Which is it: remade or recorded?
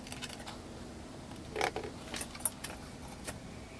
recorded